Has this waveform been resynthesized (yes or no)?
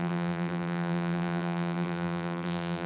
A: yes